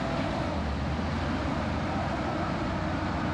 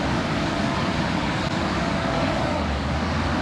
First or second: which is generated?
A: second